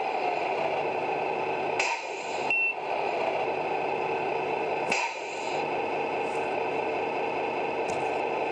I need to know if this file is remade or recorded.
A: recorded